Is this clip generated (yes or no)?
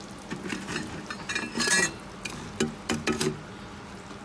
no